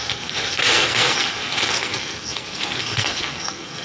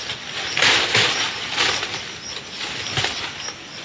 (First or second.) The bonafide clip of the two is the second